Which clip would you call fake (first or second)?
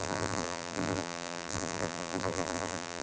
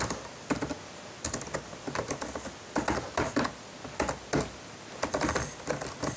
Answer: first